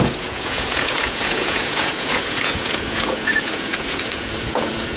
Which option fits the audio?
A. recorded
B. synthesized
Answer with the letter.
B